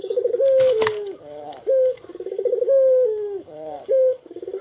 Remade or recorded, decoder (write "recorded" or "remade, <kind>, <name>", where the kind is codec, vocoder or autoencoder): remade, codec, DAC